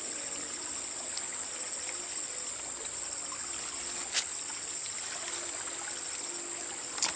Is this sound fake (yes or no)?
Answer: no